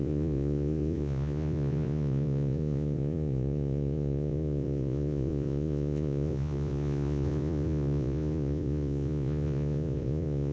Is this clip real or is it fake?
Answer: fake